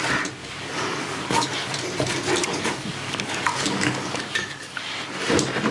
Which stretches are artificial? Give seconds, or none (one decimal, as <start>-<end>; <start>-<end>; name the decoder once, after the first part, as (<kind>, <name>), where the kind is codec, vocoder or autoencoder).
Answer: 0.4-1.5 (codec, DAC); 2.4-4.8